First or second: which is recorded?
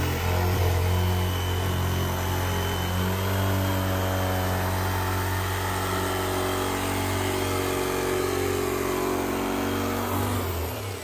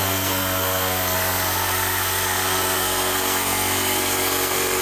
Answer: first